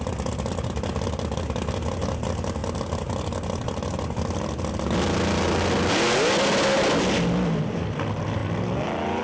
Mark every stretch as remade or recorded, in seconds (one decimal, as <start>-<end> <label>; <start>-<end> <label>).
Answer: 0.0-9.2 recorded